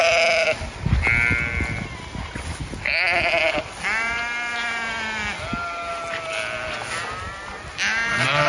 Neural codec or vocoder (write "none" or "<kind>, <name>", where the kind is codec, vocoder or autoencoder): none